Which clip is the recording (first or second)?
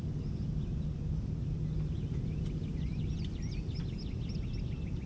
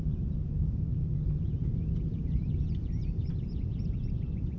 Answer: first